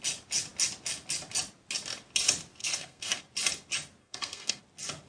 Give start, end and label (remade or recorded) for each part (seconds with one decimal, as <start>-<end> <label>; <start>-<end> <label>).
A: 0.0-2.6 recorded; 2.6-3.2 remade; 3.2-4.0 recorded; 4.0-4.6 remade; 4.6-5.1 recorded